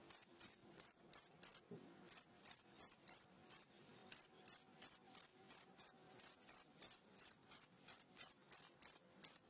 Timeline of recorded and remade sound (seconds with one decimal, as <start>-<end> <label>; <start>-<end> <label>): 0.0-0.6 recorded; 0.6-1.1 remade; 1.1-9.5 recorded